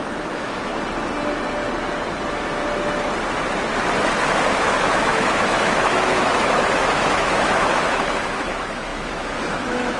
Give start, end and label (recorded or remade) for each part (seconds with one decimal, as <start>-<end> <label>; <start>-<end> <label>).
0.0-0.7 remade; 0.7-4.5 recorded; 4.5-10.0 remade